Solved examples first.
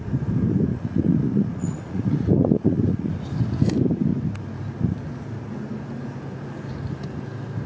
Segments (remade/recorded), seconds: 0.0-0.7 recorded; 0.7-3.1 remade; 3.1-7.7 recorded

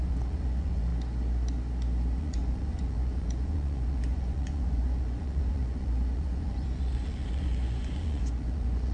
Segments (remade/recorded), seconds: 0.0-0.9 remade; 0.9-2.2 recorded; 2.2-8.9 remade

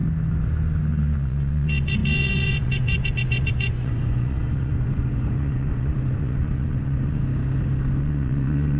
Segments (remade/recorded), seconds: 0.0-0.9 recorded; 0.9-7.2 remade; 7.2-8.0 recorded; 8.0-8.8 remade

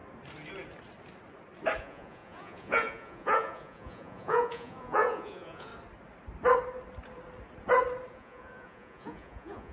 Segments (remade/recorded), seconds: 0.0-1.8 recorded; 1.8-5.7 remade; 5.7-8.1 recorded; 8.1-9.7 remade

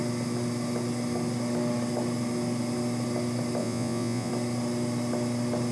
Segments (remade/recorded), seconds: 0.0-3.6 recorded; 3.6-4.3 remade; 4.3-5.7 recorded